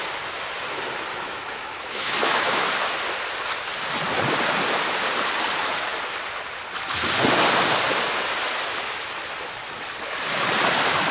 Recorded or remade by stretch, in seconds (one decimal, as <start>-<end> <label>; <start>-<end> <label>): 0.0-1.1 recorded; 1.1-2.7 remade; 2.7-11.1 recorded